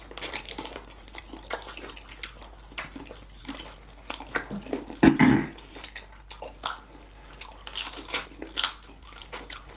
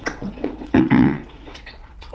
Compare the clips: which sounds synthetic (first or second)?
second